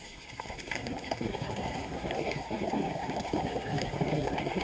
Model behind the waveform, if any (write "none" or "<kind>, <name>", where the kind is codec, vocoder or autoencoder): codec, SNAC